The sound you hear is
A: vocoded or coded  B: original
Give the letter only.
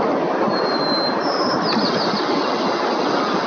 B